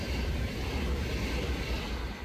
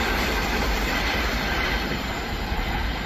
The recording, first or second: first